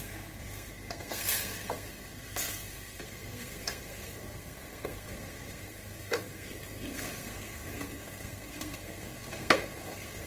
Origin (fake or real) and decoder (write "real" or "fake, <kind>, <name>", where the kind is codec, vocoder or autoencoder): fake, codec, SNAC